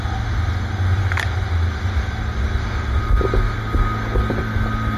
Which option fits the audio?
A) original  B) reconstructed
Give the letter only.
A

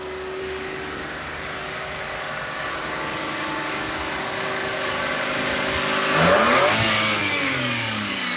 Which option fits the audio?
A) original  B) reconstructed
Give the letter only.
B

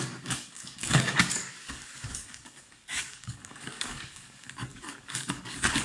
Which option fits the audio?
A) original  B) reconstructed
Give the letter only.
B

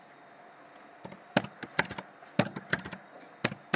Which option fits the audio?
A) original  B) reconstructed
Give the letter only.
A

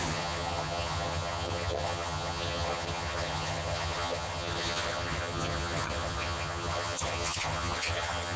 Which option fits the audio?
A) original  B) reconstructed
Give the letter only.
B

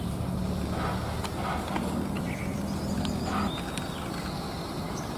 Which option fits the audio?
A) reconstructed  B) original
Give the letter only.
B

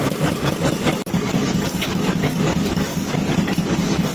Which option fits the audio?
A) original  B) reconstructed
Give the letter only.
B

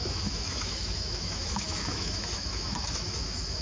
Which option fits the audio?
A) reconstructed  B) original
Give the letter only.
A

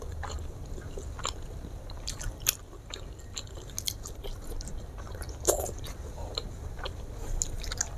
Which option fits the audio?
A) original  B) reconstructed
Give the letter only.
A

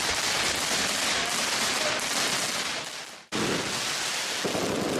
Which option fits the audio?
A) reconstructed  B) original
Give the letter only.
B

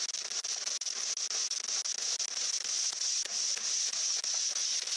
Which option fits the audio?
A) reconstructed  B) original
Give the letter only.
B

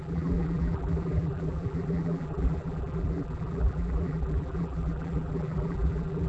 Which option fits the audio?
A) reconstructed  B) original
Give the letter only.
A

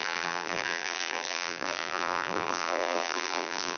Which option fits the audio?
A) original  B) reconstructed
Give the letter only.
B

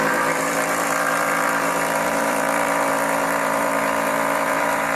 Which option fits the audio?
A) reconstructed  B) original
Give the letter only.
A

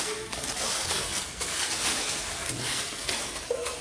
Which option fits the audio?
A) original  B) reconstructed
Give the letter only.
B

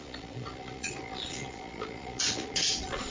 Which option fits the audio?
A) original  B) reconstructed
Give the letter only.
B